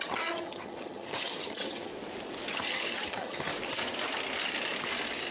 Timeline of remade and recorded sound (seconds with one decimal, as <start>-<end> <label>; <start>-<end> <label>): 0.0-1.9 remade; 1.9-2.5 recorded; 2.5-3.5 remade; 3.5-5.3 recorded

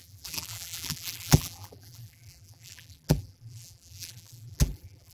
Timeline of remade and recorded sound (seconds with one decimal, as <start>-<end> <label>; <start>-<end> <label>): 0.0-5.1 remade

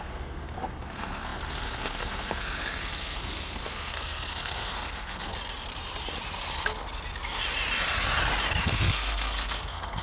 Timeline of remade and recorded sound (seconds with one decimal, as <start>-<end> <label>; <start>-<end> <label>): 0.0-5.3 remade; 5.3-8.6 recorded; 8.6-10.0 remade

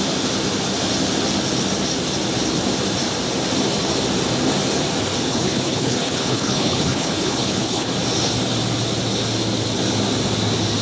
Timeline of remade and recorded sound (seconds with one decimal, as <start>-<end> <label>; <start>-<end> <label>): 0.0-5.3 recorded; 5.3-7.9 remade; 7.9-10.8 recorded

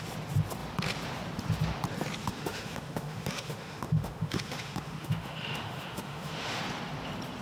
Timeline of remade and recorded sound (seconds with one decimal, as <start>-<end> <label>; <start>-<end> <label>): 0.0-2.2 recorded; 2.2-6.6 remade; 6.6-7.4 recorded